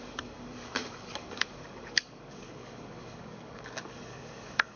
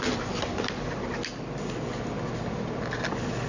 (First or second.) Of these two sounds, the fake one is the first